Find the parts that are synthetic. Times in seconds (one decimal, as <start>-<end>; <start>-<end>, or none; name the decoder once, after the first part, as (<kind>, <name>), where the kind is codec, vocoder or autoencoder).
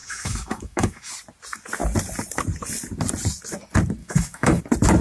0.0-1.1 (autoencoder, DAC-VAE); 4.0-4.6